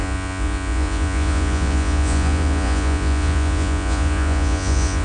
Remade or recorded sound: remade